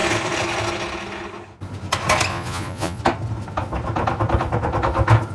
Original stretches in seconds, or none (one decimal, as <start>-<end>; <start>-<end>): 0.0-2.3; 3.0-5.3